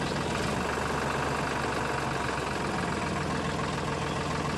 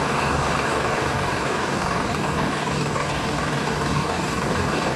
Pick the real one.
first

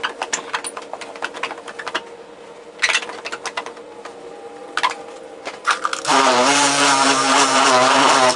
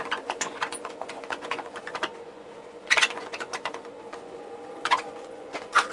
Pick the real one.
first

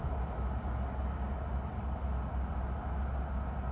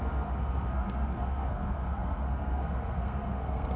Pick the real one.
first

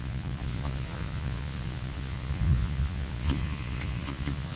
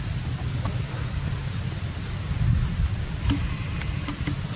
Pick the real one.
second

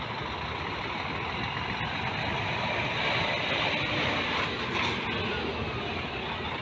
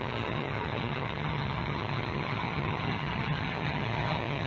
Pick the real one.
first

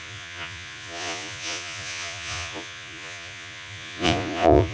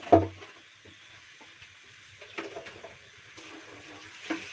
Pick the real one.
second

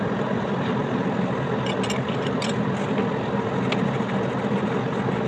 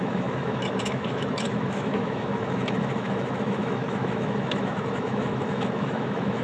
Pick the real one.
first